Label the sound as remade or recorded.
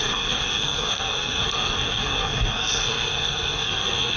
remade